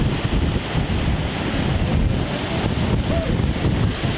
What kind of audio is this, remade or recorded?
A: recorded